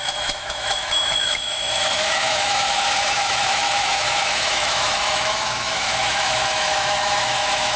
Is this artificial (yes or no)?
yes